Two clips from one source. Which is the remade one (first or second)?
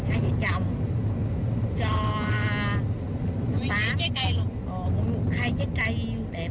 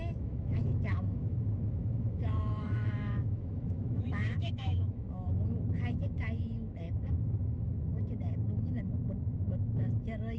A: second